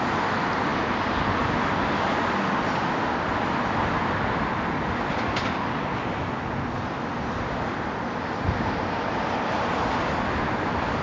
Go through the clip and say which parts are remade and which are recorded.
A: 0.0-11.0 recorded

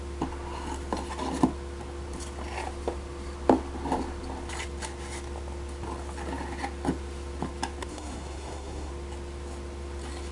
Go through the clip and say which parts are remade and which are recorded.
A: 0.0-7.9 recorded; 7.9-8.9 remade; 8.9-10.3 recorded

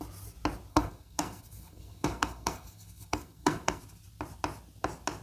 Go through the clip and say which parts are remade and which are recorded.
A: 0.0-0.7 recorded; 0.7-3.8 remade; 3.8-5.2 recorded

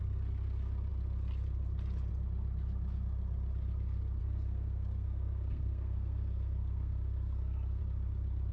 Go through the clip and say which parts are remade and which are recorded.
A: 0.0-4.2 recorded; 4.2-7.8 remade; 7.8-8.5 recorded

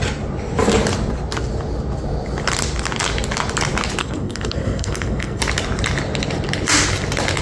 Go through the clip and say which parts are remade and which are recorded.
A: 0.0-4.0 recorded; 4.0-5.4 remade; 5.4-7.4 recorded